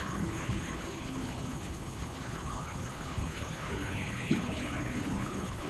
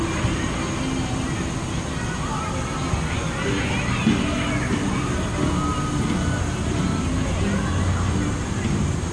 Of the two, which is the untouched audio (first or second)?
second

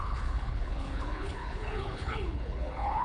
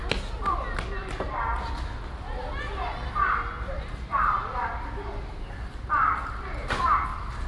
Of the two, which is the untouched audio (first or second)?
second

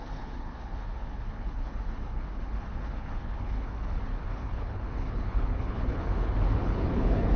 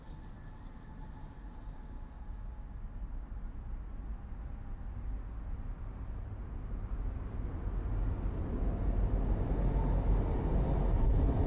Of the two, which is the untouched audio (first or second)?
second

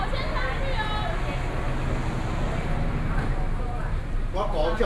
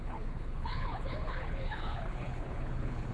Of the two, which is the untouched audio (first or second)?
first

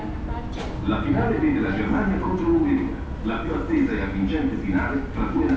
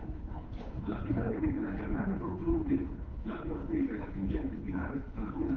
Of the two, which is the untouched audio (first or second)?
first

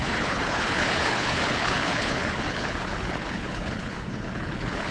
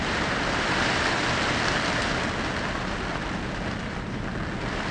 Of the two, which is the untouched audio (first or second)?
second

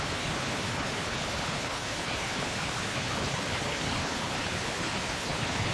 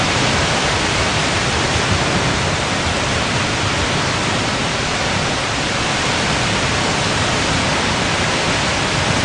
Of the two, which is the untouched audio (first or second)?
second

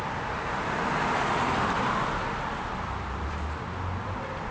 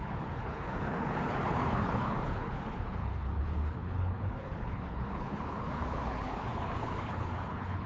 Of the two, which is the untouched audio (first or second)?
first